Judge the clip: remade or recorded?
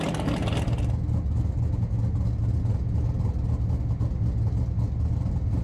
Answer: recorded